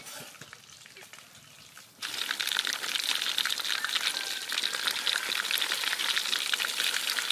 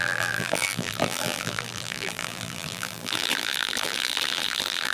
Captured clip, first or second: first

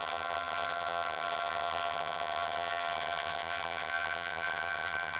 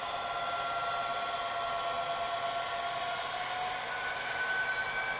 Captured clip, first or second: second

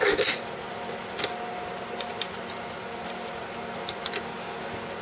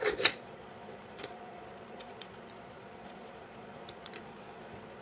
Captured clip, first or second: first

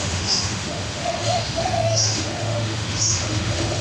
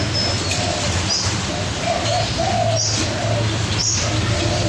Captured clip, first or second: second